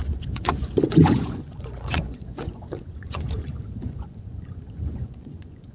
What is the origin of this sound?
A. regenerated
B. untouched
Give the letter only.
A